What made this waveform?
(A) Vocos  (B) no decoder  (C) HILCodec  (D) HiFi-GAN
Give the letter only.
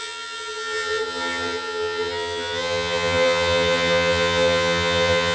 D